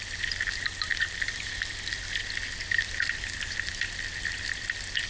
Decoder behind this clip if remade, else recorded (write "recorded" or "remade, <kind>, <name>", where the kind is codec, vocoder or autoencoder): recorded